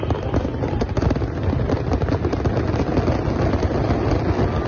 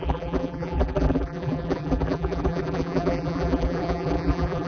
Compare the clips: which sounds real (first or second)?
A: first